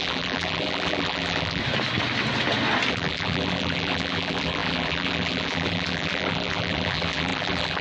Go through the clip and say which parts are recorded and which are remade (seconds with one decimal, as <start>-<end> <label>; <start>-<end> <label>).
0.0-1.6 remade; 1.6-2.9 recorded; 2.9-7.8 remade